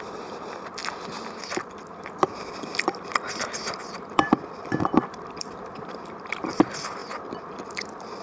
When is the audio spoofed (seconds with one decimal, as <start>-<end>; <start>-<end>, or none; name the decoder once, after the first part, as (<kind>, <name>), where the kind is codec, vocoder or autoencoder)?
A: 0.0-0.8 (vocoder, BigVGAN v2); 1.9-8.2